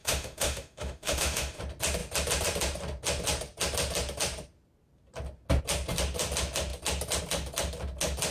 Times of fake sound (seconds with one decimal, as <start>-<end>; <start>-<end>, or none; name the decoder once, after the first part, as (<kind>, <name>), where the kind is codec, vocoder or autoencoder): 0.0-1.6 (autoencoder, DAC-VAE)